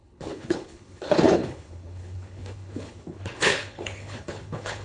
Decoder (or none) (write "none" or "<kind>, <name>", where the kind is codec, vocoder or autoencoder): codec, HILCodec